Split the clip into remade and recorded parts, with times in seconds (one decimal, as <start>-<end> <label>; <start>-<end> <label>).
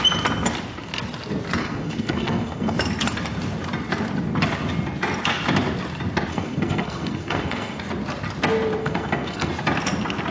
0.0-1.6 recorded; 1.6-2.8 remade; 2.8-6.3 recorded; 6.3-7.8 remade; 7.8-8.8 recorded; 8.8-9.5 remade; 9.5-10.3 recorded